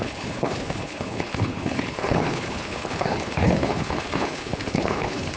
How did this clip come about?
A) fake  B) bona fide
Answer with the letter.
A